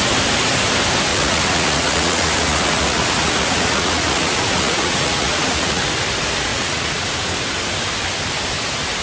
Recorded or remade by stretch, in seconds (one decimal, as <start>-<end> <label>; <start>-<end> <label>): 0.0-1.1 recorded; 1.1-5.9 remade; 5.9-6.5 recorded; 6.5-7.1 remade; 7.1-9.0 recorded